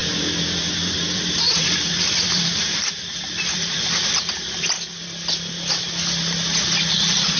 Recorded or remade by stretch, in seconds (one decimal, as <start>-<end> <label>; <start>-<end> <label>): 0.0-4.4 remade; 4.4-7.4 recorded